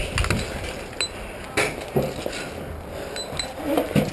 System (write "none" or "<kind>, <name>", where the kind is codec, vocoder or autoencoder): none